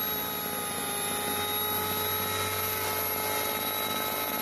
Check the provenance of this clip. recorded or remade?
recorded